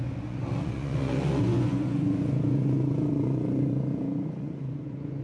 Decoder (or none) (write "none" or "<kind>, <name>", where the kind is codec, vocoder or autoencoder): vocoder, Vocos